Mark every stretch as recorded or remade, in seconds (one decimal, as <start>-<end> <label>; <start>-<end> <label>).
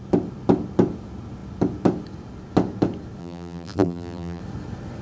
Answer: 0.0-3.2 recorded; 3.2-4.4 remade; 4.4-5.0 recorded